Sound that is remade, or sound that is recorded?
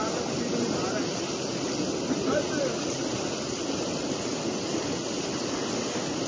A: recorded